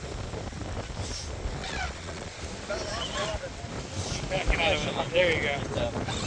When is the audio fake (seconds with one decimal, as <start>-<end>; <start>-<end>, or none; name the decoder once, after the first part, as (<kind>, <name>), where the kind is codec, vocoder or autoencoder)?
1.6-2.4 (vocoder, Vocos)